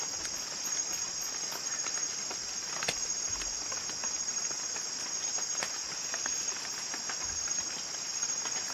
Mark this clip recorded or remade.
recorded